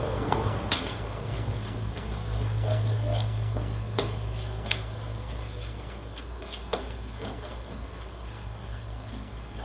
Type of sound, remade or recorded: remade